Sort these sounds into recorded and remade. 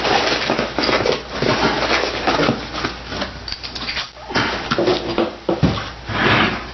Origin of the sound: recorded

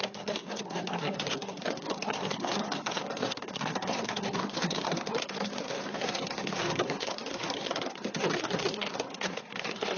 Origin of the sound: remade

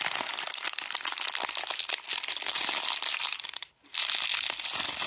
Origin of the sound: remade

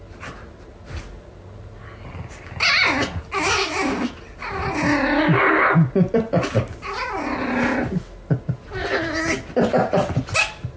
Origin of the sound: recorded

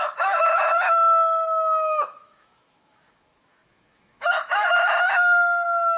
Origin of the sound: remade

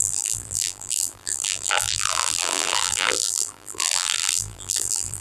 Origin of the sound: remade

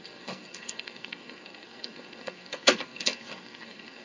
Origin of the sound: remade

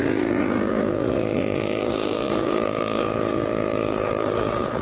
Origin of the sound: remade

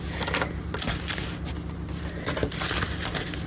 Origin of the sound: recorded